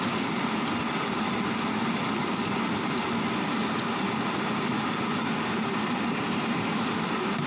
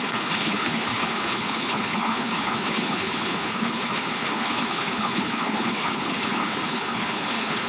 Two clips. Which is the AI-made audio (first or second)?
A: second